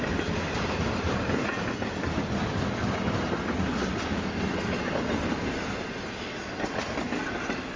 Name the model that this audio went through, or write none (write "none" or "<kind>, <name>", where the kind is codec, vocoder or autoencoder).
none